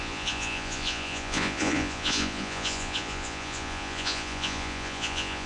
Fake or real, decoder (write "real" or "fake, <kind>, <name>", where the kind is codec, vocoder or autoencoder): fake, vocoder, Vocos